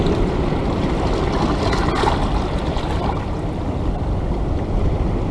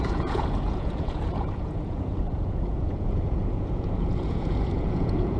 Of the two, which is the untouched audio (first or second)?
first